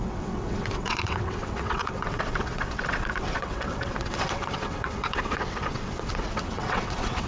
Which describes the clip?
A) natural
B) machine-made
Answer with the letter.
B